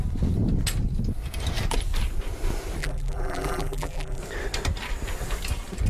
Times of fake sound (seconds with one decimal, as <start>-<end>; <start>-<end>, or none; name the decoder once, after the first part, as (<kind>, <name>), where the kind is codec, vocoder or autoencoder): 2.8-4.2 (vocoder, BigVGAN v2)